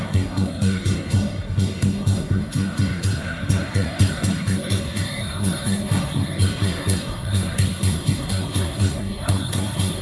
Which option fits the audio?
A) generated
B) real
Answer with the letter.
A